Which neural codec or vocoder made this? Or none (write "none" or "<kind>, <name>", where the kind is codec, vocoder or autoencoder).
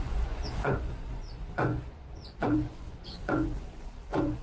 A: vocoder, Vocos